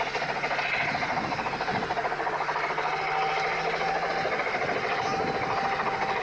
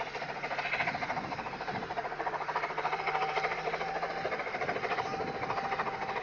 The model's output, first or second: second